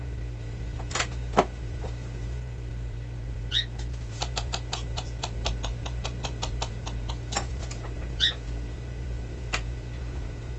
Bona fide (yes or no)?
no